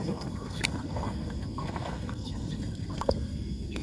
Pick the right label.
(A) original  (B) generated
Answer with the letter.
B